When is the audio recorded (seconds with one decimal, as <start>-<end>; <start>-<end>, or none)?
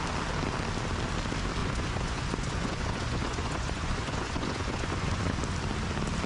0.0-1.6; 5.4-6.3